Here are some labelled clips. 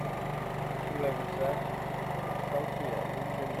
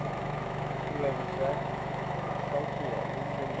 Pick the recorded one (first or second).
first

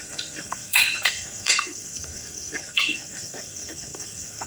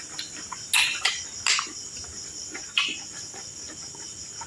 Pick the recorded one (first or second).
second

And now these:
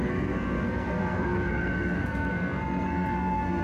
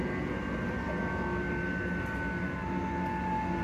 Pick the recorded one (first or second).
second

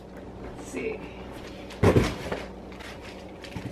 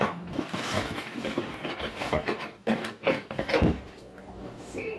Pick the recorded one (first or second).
first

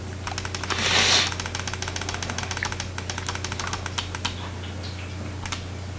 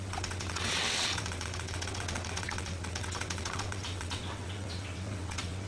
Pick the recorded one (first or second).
first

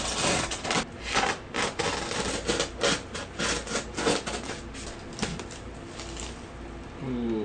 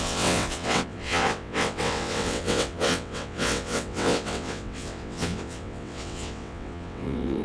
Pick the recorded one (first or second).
first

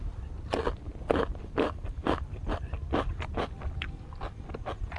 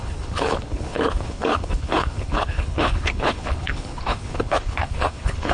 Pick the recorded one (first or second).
first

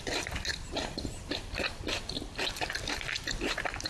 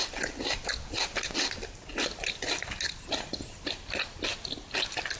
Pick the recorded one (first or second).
second